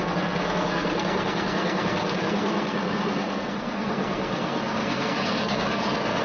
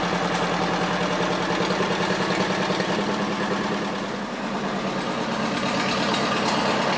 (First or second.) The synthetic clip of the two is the first